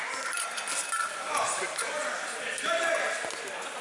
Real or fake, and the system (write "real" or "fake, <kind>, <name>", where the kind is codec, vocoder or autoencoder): real